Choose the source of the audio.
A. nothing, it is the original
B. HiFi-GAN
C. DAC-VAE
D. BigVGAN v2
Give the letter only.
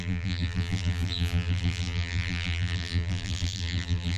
D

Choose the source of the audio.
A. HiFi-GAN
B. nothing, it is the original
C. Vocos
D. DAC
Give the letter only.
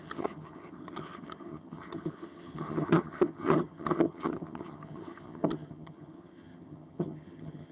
A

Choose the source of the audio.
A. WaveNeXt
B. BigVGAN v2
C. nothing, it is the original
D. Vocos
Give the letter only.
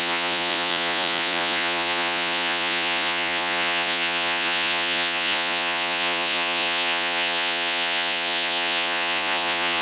D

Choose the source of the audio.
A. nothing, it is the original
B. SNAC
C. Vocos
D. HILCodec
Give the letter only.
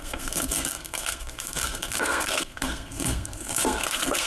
B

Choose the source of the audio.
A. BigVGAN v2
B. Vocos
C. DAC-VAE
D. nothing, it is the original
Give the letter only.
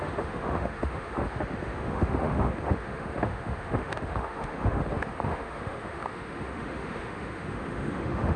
C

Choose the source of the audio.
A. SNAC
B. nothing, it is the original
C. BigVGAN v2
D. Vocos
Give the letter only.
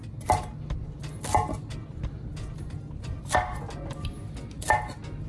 B